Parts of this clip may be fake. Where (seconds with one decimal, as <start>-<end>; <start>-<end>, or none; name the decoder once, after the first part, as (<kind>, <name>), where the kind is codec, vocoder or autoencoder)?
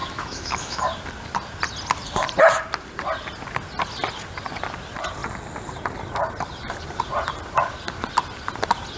0.0-0.8 (autoencoder, DAC-VAE)